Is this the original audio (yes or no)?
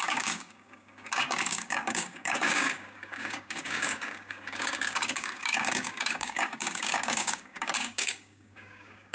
no